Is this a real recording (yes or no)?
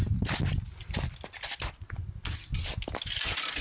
yes